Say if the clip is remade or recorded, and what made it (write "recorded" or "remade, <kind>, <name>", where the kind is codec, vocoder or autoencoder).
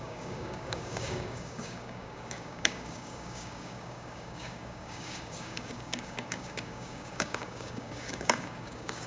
remade, codec, DAC